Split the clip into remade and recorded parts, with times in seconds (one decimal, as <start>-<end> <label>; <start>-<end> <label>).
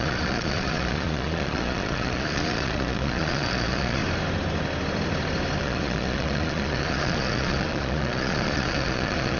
0.0-4.0 remade; 4.0-5.6 recorded; 5.6-9.4 remade